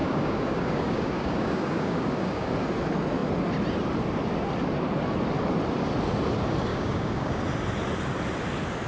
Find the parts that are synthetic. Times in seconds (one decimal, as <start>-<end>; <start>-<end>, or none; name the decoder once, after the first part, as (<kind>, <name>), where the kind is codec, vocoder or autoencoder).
0.0-2.5 (codec, DAC); 6.7-7.4